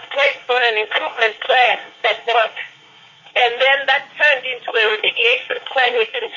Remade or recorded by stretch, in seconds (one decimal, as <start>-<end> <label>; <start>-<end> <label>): 0.0-3.4 remade; 3.4-4.7 recorded; 4.7-6.4 remade